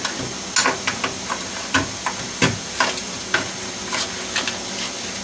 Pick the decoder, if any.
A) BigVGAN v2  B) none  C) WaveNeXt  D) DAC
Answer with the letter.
B